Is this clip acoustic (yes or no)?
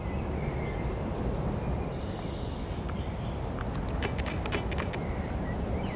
yes